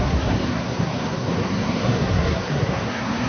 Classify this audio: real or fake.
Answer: fake